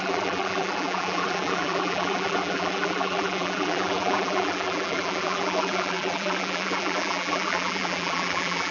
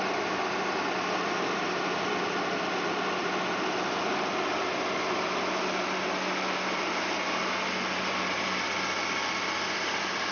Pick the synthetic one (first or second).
first